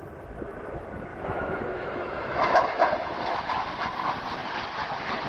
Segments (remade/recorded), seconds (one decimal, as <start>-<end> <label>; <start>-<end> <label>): 0.0-1.1 recorded; 1.1-3.4 remade; 3.4-5.3 recorded